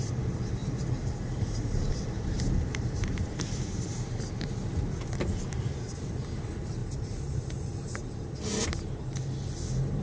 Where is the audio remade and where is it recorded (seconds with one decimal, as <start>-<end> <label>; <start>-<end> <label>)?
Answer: 0.0-0.6 recorded; 0.6-5.9 remade; 5.9-6.8 recorded; 6.8-7.5 remade; 7.5-10.0 recorded